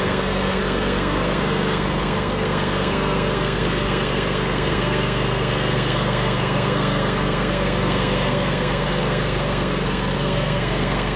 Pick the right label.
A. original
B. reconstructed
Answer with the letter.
B